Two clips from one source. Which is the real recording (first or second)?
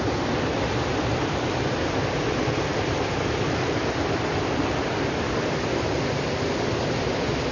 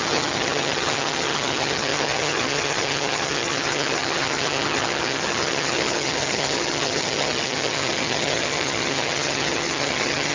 first